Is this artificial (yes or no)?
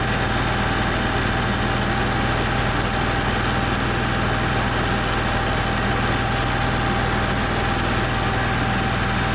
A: no